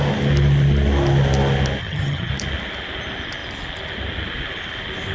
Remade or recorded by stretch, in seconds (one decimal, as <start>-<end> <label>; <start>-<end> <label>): 0.0-1.8 recorded; 1.8-2.3 remade; 2.3-5.1 recorded